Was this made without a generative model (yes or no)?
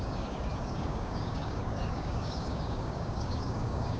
no